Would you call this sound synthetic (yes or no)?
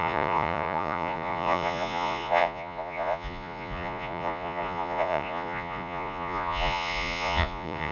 yes